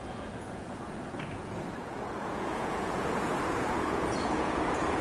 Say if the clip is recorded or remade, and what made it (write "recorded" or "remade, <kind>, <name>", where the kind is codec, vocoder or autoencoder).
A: remade, vocoder, Vocos